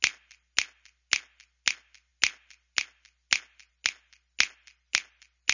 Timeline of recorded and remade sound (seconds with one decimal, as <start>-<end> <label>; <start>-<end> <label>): 0.0-5.5 recorded